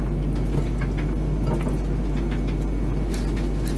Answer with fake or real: real